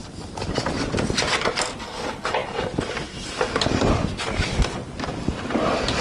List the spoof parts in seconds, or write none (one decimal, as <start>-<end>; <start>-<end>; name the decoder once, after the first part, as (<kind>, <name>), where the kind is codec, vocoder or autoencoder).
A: none